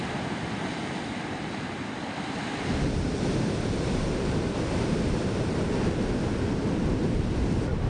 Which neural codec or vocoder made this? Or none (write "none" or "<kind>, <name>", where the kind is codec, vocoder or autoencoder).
none